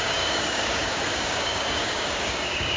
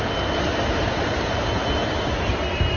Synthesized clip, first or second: first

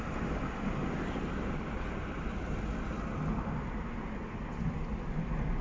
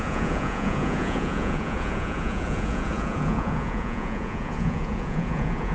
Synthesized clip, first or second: second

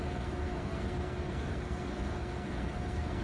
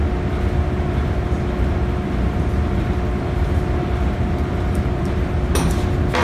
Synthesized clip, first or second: first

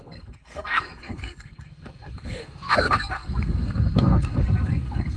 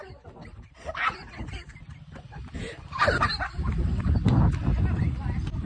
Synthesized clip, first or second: first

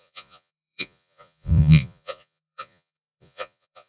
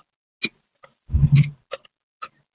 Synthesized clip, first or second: first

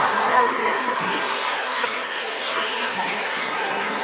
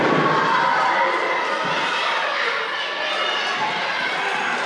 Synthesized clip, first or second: first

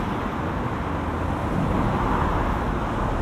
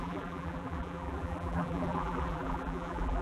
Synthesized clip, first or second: second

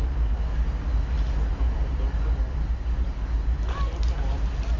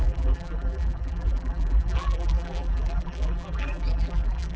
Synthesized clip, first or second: second